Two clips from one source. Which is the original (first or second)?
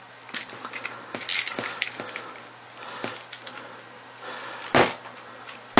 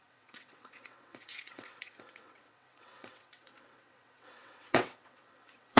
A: first